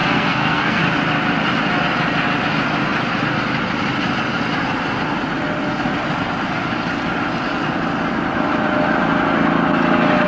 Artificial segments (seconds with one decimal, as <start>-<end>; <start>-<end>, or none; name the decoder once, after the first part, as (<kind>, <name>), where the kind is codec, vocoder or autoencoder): 0.0-0.8 (codec, SNAC)